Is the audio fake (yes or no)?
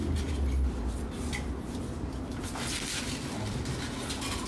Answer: no